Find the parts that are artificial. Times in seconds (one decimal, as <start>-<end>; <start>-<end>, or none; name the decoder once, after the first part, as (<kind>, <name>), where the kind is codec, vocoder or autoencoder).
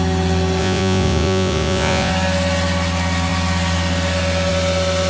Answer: 0.6-2.1 (vocoder, Vocos)